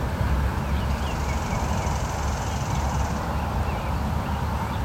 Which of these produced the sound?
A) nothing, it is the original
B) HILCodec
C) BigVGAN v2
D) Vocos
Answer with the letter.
A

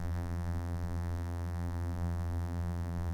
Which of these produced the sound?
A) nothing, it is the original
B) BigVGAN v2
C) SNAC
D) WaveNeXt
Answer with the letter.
B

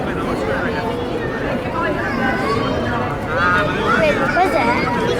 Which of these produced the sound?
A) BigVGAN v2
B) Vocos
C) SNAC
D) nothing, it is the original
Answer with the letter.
D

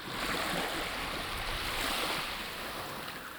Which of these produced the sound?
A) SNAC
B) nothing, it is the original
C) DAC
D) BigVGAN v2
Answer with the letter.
B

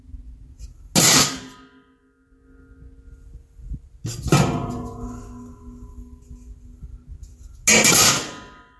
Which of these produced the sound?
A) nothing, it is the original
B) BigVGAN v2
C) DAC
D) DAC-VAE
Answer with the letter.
A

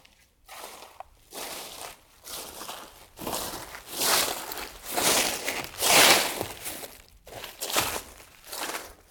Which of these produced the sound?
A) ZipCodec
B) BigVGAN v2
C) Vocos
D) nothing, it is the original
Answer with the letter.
B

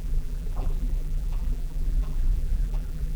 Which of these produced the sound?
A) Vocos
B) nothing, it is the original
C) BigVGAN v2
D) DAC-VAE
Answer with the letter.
C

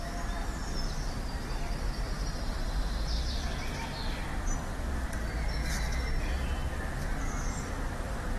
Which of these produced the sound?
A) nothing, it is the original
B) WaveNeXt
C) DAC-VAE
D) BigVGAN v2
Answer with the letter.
A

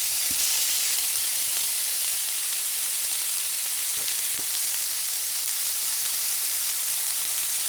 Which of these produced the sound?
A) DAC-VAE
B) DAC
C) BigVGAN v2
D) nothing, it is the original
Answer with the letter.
C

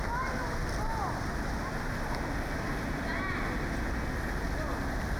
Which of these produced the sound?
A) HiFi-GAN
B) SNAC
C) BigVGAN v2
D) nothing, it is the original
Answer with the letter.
D